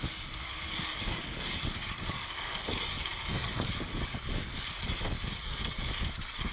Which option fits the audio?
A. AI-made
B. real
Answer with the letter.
A